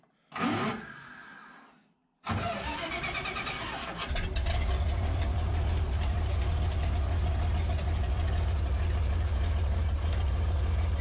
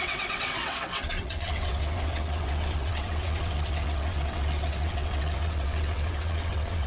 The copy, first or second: second